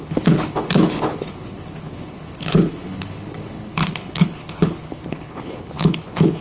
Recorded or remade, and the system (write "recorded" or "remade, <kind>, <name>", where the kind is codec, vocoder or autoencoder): remade, codec, HILCodec